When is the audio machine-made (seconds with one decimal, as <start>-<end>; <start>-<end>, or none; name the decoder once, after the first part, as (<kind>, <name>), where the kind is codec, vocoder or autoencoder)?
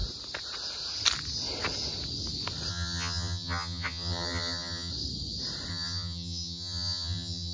2.7-4.9 (vocoder, HiFi-GAN); 5.7-7.5